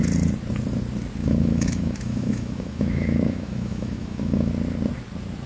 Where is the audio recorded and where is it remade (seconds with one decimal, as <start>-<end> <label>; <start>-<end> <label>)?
0.0-1.2 recorded; 1.2-4.5 remade; 4.5-5.5 recorded